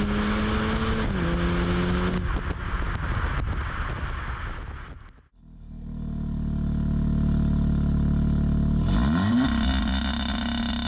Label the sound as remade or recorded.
recorded